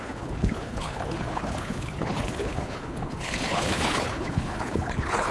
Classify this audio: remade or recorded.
remade